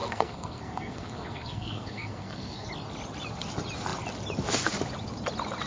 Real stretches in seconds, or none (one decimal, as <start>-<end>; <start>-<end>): 2.7-5.7